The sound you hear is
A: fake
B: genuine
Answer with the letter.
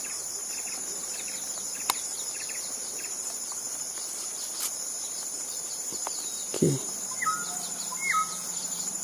A